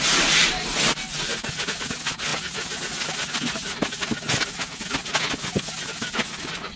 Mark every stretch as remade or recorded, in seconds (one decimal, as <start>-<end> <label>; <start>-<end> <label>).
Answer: 0.0-6.8 recorded